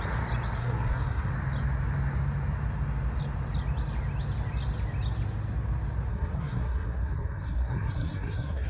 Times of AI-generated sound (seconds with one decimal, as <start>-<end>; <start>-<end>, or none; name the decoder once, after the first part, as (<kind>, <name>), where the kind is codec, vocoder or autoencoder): 0.6-1.3 (codec, SNAC); 6.1-8.7